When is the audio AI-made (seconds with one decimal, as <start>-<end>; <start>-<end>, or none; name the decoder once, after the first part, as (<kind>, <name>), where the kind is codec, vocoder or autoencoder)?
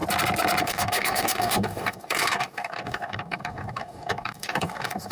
0.6-5.1 (codec, DAC)